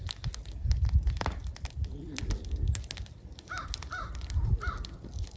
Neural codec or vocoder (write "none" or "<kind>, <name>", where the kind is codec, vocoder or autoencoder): none